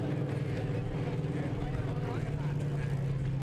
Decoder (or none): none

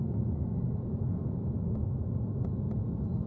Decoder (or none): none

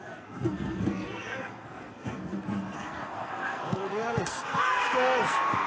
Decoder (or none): codec, SNAC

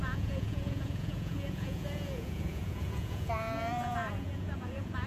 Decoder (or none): vocoder, Vocos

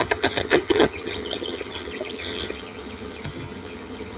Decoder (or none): vocoder, HiFi-GAN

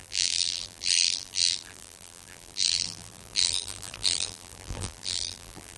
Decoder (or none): vocoder, BigVGAN v2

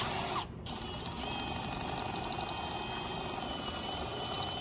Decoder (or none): none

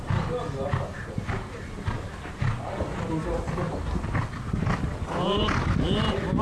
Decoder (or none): none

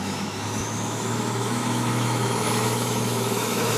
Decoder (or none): autoencoder, DAC-VAE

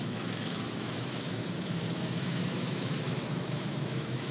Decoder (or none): autoencoder, DAC-VAE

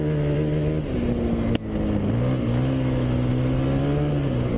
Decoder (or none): none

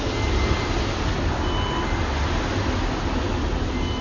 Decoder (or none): none